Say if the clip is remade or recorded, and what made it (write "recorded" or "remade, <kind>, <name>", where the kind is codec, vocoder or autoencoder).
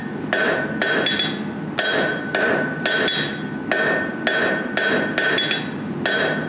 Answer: recorded